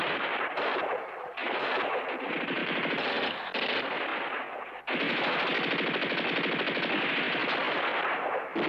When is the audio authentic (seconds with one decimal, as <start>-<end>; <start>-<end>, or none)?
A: 1.7-2.6; 3.1-8.7